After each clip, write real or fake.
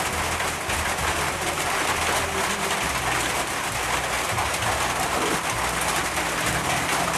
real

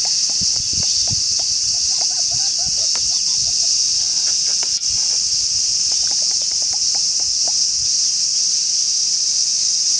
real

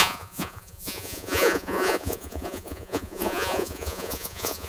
fake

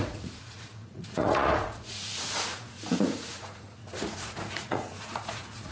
fake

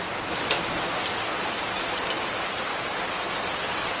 real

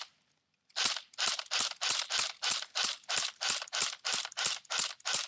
real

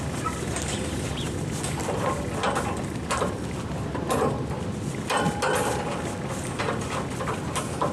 real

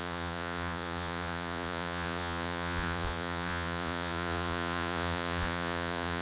fake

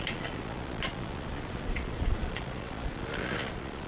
fake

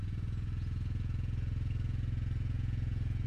fake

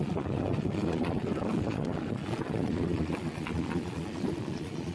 fake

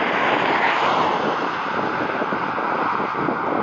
real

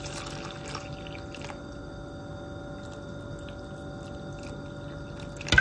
real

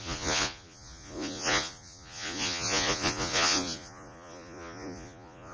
fake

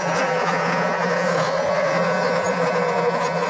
fake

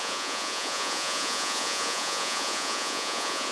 fake